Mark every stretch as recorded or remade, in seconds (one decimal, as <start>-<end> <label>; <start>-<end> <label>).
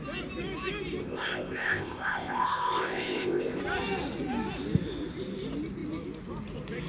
0.0-1.0 recorded; 1.0-3.6 remade; 3.6-6.9 recorded